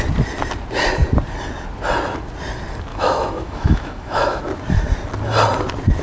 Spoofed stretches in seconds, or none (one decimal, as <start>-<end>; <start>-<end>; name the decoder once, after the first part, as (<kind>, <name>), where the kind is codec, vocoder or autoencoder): 2.9-4.4 (autoencoder, DAC-VAE)